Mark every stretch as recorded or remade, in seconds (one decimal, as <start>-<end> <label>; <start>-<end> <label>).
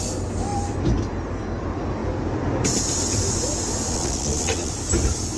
0.0-3.9 recorded; 3.9-4.7 remade; 4.7-5.4 recorded